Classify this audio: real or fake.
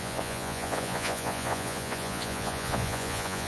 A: fake